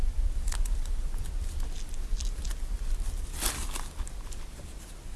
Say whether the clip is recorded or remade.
recorded